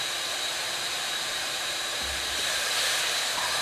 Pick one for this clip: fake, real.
fake